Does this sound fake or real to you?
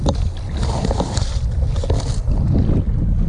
real